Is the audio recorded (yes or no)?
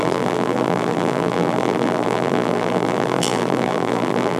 no